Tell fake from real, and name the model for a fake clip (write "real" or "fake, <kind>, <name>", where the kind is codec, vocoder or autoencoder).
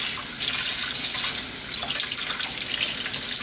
real